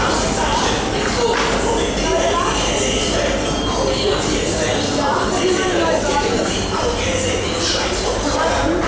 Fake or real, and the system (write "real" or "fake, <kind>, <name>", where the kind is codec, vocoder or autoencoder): real